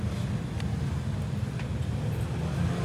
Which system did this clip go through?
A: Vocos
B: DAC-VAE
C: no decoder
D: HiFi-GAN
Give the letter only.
C